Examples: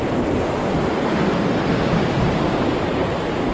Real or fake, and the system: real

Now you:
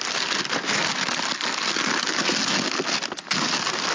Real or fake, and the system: real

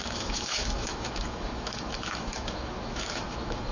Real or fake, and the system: fake, autoencoder, DAC-VAE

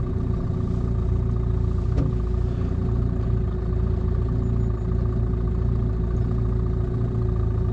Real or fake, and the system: real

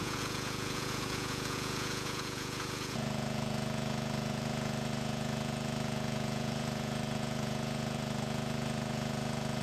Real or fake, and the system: fake, vocoder, Vocos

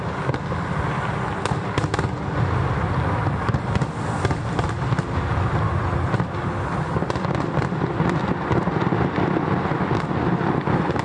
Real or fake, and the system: real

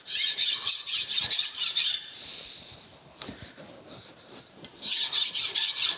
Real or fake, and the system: fake, vocoder, BigVGAN v2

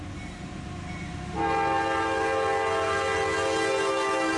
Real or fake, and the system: real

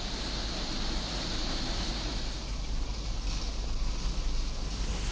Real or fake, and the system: real